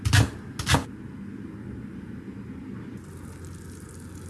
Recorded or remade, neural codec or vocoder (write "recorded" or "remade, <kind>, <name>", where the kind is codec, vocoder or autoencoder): recorded